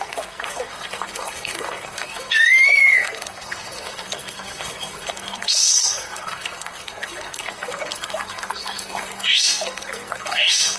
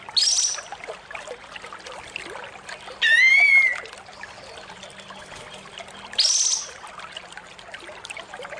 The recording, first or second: second